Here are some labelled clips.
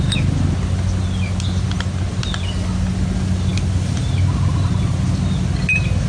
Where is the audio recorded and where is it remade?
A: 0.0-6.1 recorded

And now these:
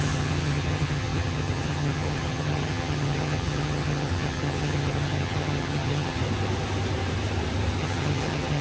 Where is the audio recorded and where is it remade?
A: 0.0-6.2 remade; 6.2-7.8 recorded; 7.8-8.6 remade